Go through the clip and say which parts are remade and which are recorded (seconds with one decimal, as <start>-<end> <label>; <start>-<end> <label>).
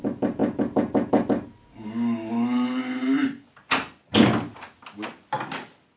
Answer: 0.0-6.0 recorded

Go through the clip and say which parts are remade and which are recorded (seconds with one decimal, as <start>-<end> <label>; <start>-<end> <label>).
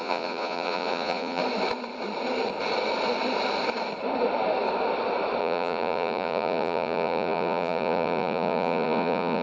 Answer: 0.0-1.4 remade; 1.4-5.4 recorded; 5.4-9.4 remade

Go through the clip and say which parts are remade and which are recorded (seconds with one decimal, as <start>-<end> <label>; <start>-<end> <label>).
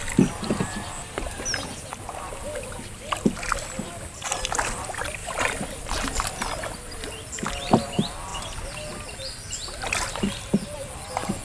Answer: 0.0-5.2 recorded; 5.2-5.8 remade; 5.8-11.4 recorded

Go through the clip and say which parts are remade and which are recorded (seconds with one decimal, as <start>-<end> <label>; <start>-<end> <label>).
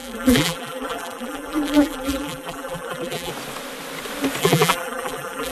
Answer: 0.0-3.3 remade; 3.3-4.4 recorded; 4.4-5.5 remade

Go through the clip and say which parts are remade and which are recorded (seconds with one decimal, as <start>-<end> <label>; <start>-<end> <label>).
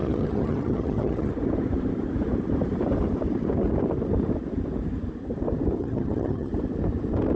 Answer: 0.0-1.3 remade; 1.3-5.8 recorded; 5.8-6.5 remade; 6.5-7.4 recorded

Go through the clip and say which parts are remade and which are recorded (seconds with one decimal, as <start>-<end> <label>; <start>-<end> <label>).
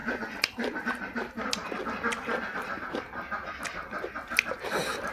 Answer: 0.0-1.8 remade; 1.8-5.1 recorded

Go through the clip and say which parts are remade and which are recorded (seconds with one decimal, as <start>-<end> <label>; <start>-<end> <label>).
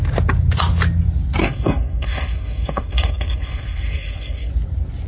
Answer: 0.0-1.4 recorded; 1.4-4.5 remade; 4.5-5.1 recorded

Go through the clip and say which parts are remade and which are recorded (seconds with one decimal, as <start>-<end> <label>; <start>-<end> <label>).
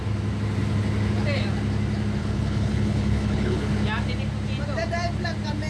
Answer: 0.0-2.2 recorded; 2.2-3.7 remade; 3.7-5.7 recorded